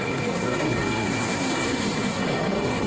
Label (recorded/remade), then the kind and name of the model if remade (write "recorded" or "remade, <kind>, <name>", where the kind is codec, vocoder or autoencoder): remade, codec, SNAC